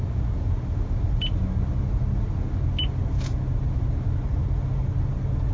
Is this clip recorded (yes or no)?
yes